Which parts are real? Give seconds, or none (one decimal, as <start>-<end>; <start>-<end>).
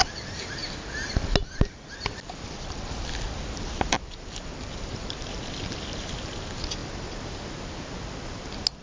0.0-8.8